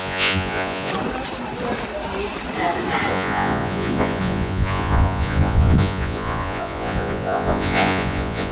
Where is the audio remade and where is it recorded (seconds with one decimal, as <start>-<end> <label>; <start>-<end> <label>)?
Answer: 0.0-0.9 remade; 0.9-3.1 recorded; 3.1-8.5 remade